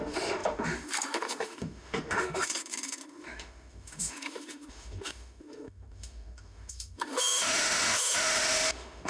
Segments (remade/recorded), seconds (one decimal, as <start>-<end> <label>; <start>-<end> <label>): 0.0-9.1 remade